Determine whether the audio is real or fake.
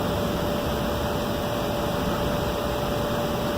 real